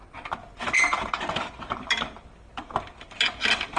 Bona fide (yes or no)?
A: no